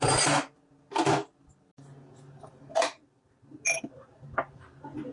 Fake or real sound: real